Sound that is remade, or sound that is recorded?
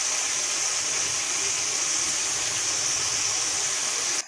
recorded